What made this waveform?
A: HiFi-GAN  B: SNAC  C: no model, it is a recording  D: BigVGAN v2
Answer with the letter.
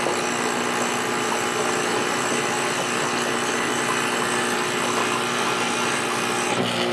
C